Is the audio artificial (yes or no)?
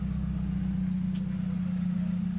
no